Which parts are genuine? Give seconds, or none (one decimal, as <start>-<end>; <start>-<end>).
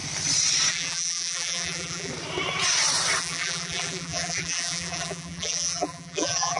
0.0-0.7; 2.1-3.2